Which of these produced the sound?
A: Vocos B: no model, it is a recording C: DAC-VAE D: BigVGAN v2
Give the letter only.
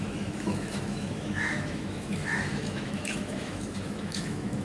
C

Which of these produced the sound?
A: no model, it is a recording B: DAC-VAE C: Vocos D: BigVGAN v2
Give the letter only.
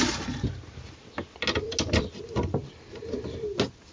A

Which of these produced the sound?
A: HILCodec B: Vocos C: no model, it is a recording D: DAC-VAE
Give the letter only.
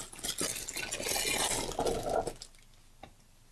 C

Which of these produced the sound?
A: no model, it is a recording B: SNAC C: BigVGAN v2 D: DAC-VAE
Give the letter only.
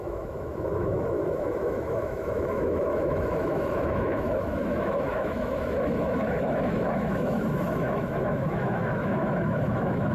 D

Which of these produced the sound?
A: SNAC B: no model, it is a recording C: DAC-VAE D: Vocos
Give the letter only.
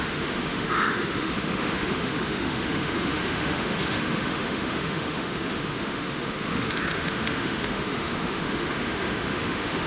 C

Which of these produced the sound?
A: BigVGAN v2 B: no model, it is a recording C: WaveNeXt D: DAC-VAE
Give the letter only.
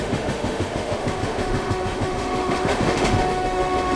D